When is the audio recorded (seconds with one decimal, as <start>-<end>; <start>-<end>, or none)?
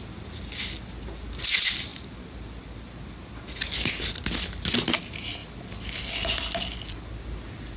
0.0-7.8